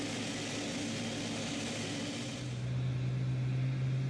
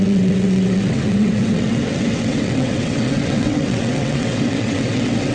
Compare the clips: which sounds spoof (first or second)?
second